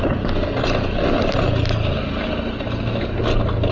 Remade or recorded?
recorded